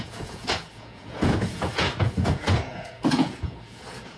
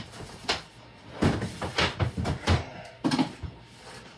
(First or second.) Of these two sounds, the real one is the second